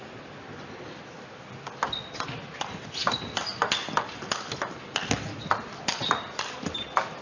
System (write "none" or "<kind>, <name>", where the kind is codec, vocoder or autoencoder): none